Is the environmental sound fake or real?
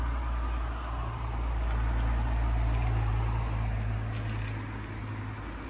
real